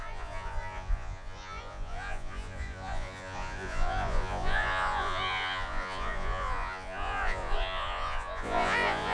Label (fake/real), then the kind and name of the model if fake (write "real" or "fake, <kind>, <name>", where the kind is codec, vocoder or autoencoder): fake, vocoder, Vocos